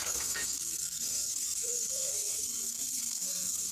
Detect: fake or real fake